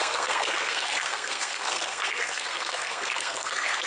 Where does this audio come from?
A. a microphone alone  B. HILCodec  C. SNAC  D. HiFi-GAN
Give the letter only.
C